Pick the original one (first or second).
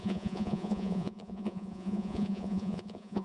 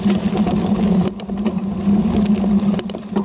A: second